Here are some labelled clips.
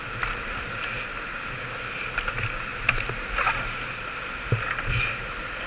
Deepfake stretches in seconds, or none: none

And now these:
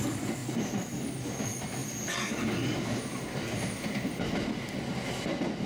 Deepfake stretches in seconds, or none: 0.4-1.3 (vocoder, BigVGAN v2)

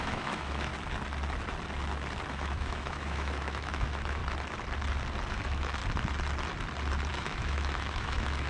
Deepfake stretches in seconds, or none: 0.0-0.7 (autoencoder, DAC-VAE); 2.3-4.2; 5.3-5.8; 7.1-8.5

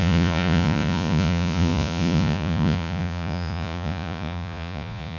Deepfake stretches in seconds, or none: 0.0-5.2 (vocoder, Vocos)

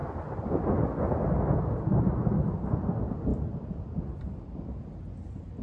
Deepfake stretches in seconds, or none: 0.0-0.7 (vocoder, BigVGAN v2)

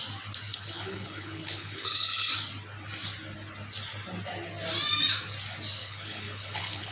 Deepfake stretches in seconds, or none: 0.5-2.3 (codec, HILCodec); 5.8-6.9